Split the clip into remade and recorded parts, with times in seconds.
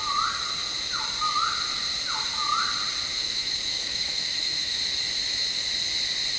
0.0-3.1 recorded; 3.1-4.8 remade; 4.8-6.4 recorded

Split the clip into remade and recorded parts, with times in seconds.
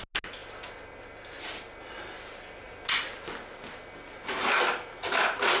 0.0-5.6 recorded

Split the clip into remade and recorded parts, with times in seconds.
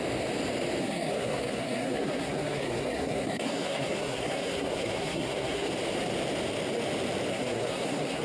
0.0-0.8 recorded; 0.8-5.7 remade; 5.7-7.3 recorded; 7.3-8.2 remade